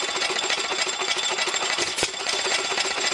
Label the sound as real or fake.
fake